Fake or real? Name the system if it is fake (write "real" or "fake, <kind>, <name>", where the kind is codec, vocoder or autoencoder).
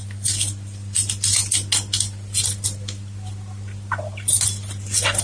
real